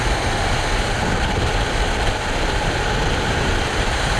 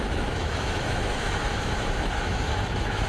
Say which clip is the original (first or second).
first